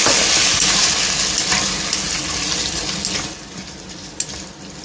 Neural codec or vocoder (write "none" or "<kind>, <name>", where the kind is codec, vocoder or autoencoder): none